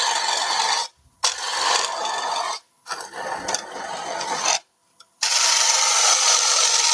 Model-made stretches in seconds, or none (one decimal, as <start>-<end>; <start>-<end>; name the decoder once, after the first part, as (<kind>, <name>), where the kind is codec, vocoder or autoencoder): 4.8-5.5 (vocoder, BigVGAN v2)